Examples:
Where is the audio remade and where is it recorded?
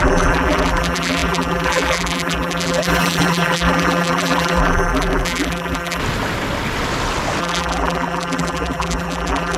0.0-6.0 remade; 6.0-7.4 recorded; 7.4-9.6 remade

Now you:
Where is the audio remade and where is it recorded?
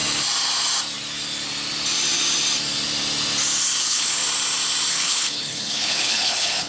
0.0-3.8 recorded; 3.8-4.2 remade; 4.2-4.9 recorded; 4.9-6.7 remade